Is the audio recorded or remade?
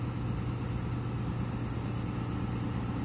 recorded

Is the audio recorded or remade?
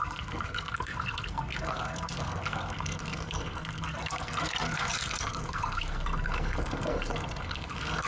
remade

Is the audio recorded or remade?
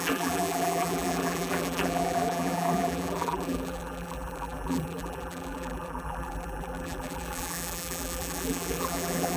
remade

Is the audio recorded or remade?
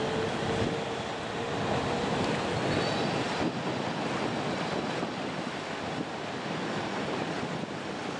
recorded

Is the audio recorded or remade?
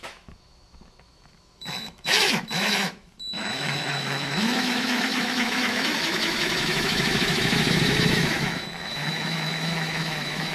remade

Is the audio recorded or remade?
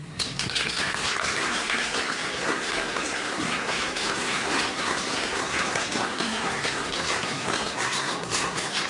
remade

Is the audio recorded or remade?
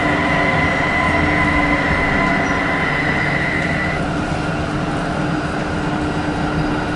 recorded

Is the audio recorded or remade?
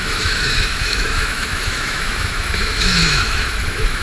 remade